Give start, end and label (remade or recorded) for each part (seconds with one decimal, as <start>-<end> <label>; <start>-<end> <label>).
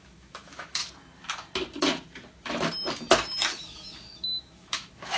0.0-0.8 remade; 0.8-3.5 recorded; 3.5-5.2 remade